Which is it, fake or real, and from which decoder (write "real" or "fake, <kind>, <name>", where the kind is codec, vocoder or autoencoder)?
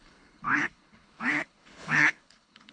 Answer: fake, codec, HILCodec